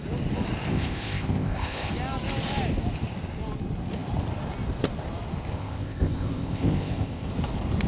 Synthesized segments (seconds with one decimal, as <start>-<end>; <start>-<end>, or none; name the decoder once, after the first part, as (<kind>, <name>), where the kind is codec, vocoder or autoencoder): 0.7-1.9 (codec, ZipCodec); 5.5-7.3